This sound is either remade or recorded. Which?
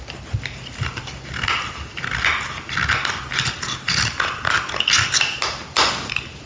recorded